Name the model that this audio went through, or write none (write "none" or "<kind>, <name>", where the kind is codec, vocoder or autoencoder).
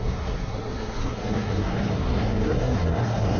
codec, SNAC